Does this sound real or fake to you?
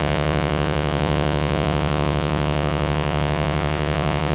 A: fake